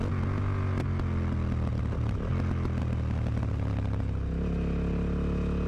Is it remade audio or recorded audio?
recorded